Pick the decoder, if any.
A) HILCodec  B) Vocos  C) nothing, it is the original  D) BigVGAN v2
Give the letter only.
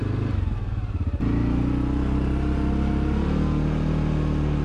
C